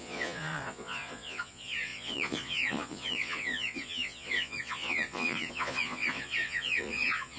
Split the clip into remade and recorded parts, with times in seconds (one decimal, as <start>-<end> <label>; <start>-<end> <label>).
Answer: 0.0-7.4 remade